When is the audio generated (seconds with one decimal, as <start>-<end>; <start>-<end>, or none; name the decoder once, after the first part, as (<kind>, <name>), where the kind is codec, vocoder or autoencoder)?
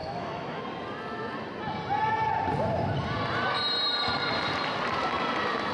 0.0-0.6 (autoencoder, DAC-VAE)